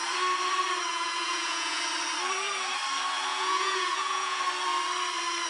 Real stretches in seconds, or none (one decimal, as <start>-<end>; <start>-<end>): 0.0-0.9; 1.8-3.3; 4.4-5.5